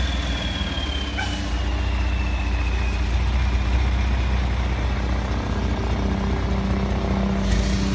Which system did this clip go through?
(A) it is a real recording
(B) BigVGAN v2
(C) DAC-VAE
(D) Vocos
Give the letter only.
A